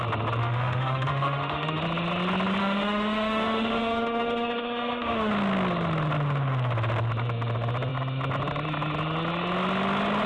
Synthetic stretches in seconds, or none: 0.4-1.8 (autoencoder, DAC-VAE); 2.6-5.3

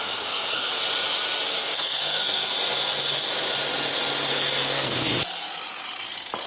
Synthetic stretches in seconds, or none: 0.0-0.8 (codec, SNAC); 1.5-2.5; 4.3-5.1

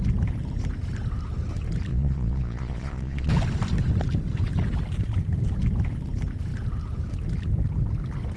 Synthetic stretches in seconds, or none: 1.9-3.3 (vocoder, Vocos)

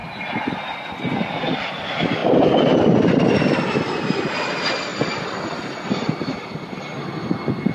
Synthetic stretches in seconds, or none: 4.9-6.3 (vocoder, BigVGAN v2)

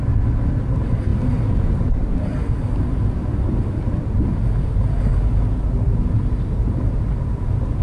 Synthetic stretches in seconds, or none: none

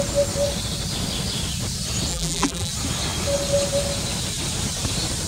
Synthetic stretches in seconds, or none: 2.1-2.7 (vocoder, BigVGAN v2)